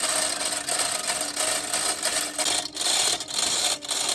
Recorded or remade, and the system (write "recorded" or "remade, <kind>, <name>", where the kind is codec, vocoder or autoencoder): recorded